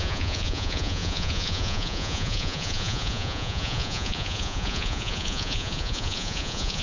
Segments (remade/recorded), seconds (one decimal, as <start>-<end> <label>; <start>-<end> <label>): 0.0-6.8 remade